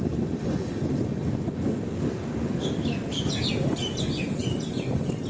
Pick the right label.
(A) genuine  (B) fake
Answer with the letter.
A